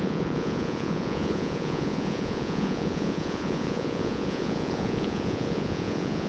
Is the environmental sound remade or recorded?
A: remade